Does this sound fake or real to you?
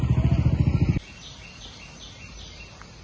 real